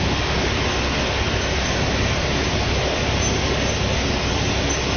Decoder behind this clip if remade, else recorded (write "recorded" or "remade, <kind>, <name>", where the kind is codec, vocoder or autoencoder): recorded